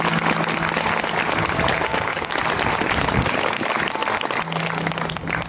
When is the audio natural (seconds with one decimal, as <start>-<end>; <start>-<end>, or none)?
0.0-1.9; 2.4-5.5